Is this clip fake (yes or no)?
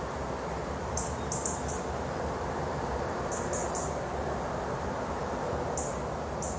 no